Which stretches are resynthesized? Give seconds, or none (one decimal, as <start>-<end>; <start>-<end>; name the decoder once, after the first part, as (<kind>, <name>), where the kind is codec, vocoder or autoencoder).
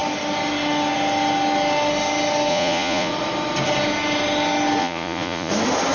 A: 2.5-3.1 (vocoder, Vocos); 4.8-5.5